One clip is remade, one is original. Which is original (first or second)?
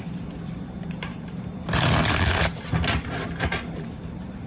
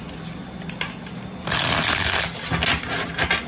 second